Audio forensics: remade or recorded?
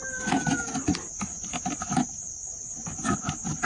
recorded